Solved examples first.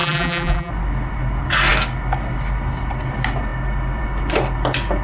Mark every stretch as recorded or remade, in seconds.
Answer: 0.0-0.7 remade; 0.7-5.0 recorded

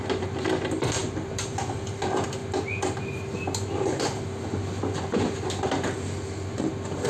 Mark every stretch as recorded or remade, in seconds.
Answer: 0.0-1.0 recorded; 1.0-2.0 remade; 2.0-7.1 recorded

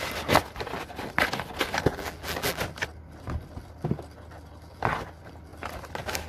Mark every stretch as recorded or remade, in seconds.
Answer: 0.0-1.9 recorded; 1.9-2.6 remade; 2.6-6.3 recorded

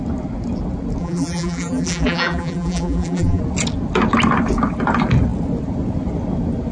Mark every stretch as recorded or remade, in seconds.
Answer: 0.0-1.0 recorded; 1.0-3.4 remade; 3.4-6.7 recorded

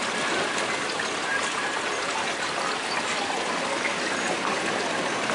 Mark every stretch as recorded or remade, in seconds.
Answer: 0.0-5.3 remade

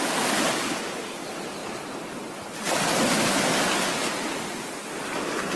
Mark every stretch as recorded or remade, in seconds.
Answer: 0.0-5.6 recorded

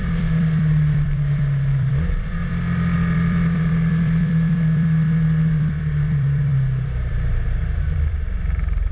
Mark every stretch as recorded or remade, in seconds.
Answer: 0.0-8.9 remade